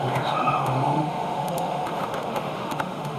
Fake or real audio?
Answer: fake